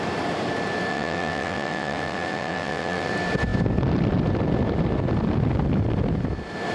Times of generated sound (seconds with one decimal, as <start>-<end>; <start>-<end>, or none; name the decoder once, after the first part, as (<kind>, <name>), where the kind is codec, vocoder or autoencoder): 0.9-3.1 (vocoder, WaveNeXt)